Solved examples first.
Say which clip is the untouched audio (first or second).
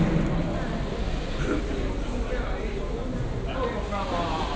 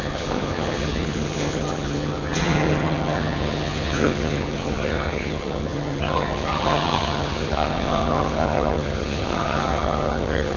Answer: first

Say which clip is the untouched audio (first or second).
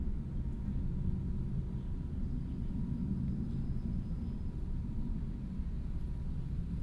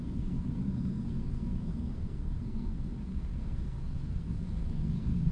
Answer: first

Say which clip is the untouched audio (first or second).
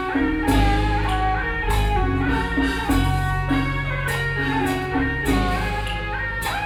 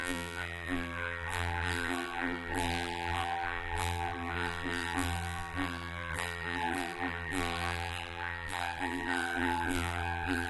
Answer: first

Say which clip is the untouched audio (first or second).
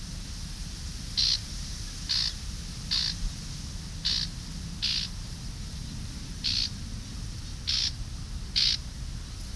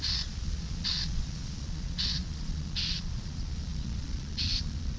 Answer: first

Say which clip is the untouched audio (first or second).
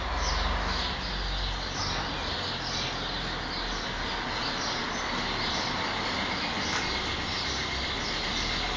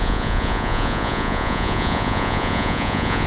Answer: first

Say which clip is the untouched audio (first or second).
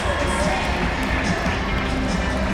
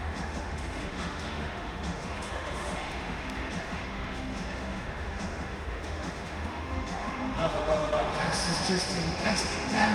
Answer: first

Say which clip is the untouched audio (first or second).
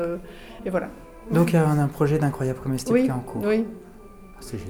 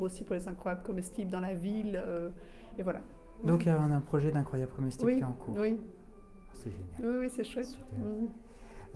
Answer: first